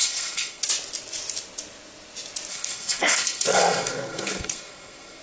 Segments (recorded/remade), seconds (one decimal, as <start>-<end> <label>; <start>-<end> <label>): 0.0-0.6 remade; 0.6-2.5 recorded; 2.5-5.2 remade